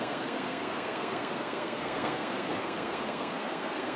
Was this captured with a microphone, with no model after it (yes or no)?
no